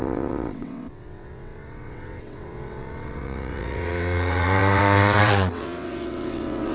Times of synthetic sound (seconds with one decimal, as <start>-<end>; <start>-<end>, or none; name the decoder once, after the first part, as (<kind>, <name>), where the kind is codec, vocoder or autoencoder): 0.0-6.7 (vocoder, WaveNeXt)